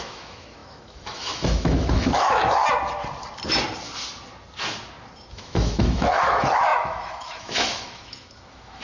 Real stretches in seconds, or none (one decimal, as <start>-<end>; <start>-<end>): 2.6-5.3

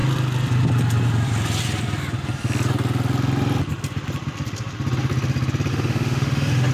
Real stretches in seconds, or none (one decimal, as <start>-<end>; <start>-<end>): 0.0-5.7